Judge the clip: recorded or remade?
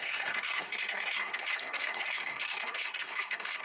remade